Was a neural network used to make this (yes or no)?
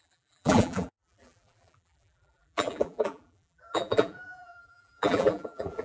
yes